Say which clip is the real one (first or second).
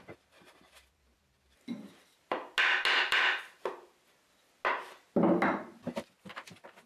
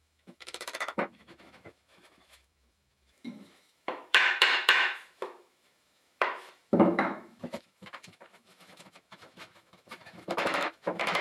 first